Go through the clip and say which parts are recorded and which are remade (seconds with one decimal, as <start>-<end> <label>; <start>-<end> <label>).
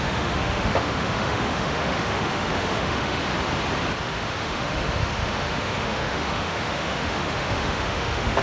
0.0-3.2 remade; 3.2-4.0 recorded; 4.0-8.4 remade